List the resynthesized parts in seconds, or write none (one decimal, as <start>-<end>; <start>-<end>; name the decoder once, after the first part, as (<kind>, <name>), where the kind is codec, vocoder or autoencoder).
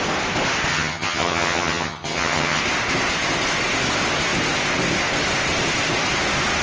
0.7-2.6 (vocoder, HiFi-GAN)